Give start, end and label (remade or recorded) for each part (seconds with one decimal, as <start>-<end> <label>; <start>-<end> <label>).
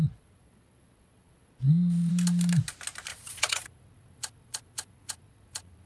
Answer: 0.0-2.1 remade; 2.1-3.1 recorded; 3.1-5.9 remade